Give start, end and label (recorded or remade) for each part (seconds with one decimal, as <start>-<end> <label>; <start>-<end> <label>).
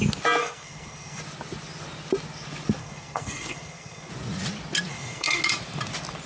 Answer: 0.0-0.4 recorded; 0.4-1.2 remade; 1.2-2.8 recorded; 2.8-4.1 remade; 4.1-4.9 recorded; 4.9-5.4 remade; 5.4-6.3 recorded